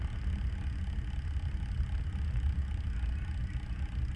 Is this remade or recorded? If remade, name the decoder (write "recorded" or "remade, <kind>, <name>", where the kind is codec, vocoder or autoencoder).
recorded